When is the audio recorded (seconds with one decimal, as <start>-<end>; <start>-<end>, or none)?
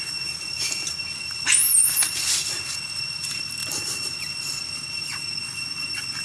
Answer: 0.0-6.2